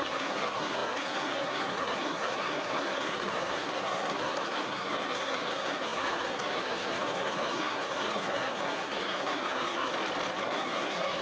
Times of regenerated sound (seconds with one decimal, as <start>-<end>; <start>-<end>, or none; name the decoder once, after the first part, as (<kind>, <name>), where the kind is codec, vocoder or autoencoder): 0.0-9.9 (codec, SNAC); 10.4-11.2